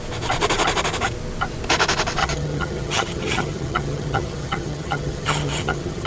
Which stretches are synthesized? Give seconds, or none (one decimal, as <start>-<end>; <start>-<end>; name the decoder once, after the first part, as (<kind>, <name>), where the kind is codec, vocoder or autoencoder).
2.2-6.1 (vocoder, HiFi-GAN)